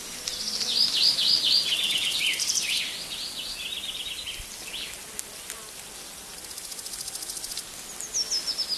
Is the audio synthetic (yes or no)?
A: no